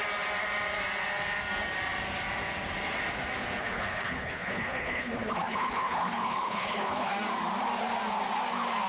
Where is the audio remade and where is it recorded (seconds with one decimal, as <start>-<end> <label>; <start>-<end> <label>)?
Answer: 0.0-3.6 recorded; 3.6-7.1 remade; 7.1-8.9 recorded